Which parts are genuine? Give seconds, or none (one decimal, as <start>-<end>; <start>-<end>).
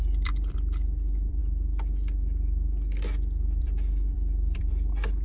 1.4-3.6